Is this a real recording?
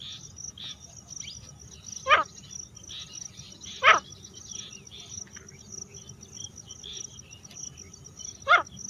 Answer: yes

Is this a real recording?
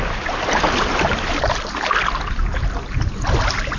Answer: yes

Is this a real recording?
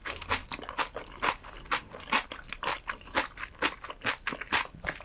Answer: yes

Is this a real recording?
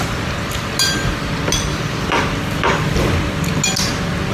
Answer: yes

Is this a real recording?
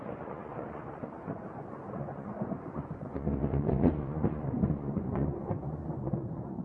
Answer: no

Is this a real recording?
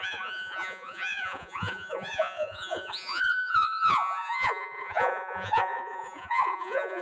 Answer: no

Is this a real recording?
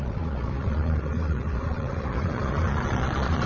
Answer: no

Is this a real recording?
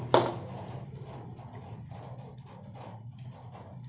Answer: yes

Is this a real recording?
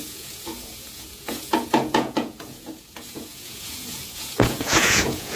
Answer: no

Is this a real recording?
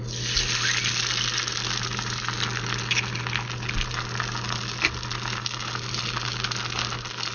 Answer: yes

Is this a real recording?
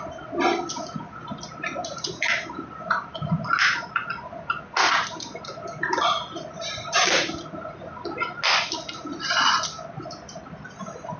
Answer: yes